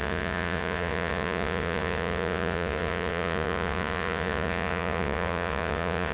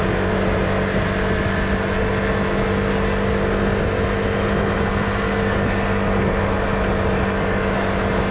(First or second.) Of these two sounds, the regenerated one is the first